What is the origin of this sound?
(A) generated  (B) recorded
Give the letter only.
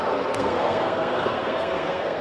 A